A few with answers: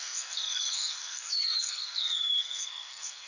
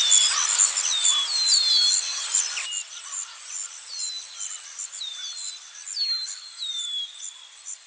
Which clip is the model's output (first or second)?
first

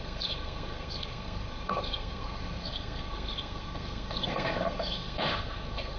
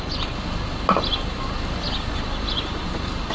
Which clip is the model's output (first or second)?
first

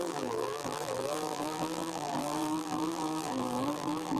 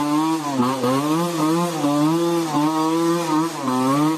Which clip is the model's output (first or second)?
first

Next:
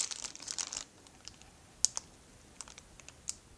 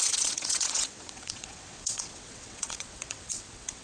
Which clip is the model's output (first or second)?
second